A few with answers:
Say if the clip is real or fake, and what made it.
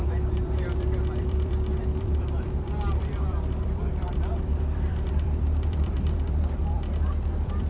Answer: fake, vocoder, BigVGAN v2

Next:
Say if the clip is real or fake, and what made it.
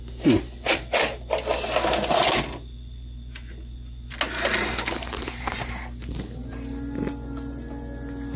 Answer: real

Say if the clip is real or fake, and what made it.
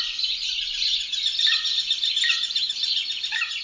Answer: fake, vocoder, BigVGAN v2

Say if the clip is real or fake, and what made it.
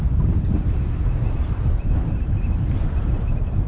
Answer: fake, vocoder, BigVGAN v2